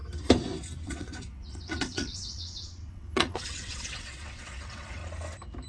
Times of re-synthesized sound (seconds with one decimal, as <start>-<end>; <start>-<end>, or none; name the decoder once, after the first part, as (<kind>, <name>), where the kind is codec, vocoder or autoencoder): 0.8-5.0 (vocoder, WaveNeXt)